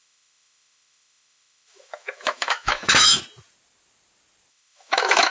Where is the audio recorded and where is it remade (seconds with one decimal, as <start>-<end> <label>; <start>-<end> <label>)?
0.0-3.2 remade; 3.2-4.5 recorded; 4.5-5.3 remade